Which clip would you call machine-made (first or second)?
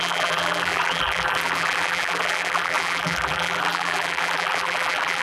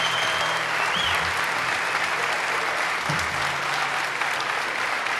first